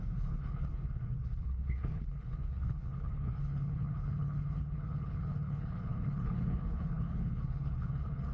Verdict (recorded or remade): remade